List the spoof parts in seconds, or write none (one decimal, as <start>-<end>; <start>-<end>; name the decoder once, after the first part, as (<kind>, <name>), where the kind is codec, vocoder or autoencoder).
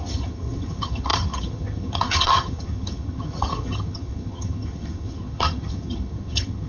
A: 0.0-6.7 (vocoder, HiFi-GAN)